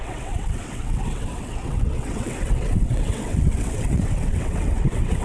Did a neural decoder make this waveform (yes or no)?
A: yes